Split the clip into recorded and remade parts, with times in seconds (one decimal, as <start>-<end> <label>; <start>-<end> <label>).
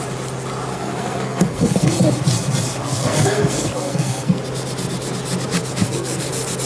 0.0-0.7 recorded; 0.7-1.9 remade; 1.9-2.8 recorded; 2.8-4.4 remade; 4.4-5.8 recorded; 5.8-6.3 remade; 6.3-6.7 recorded